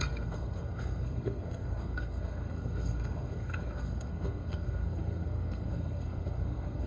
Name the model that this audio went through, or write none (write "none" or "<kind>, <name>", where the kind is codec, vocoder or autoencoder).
codec, SNAC